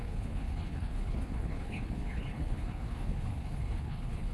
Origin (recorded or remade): remade